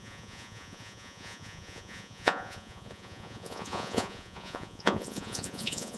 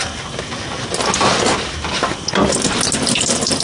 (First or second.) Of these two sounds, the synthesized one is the first